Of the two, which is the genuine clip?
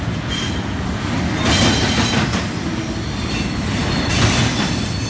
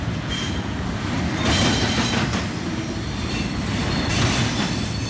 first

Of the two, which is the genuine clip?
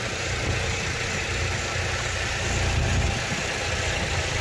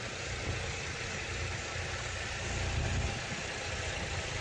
first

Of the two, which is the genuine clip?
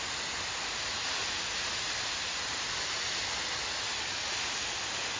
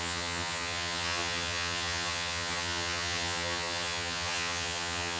first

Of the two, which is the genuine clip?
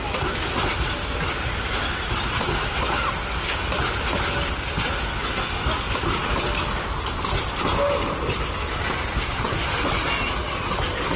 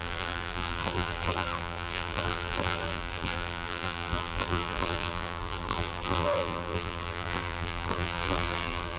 first